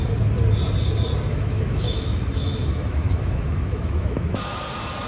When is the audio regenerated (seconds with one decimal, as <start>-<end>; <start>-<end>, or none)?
1.3-4.4